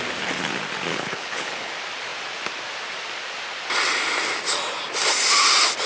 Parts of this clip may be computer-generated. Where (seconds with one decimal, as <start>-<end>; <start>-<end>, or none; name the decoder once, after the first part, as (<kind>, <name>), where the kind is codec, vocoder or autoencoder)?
0.9-1.7 (codec, HILCodec)